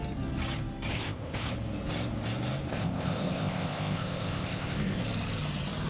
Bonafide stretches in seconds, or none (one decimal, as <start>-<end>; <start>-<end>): 0.0-0.9; 1.5-2.7; 5.0-5.9